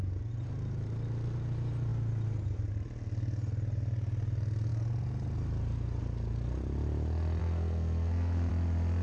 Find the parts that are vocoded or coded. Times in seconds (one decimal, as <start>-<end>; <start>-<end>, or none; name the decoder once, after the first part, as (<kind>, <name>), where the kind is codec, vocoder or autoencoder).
7.4-8.5 (codec, SNAC)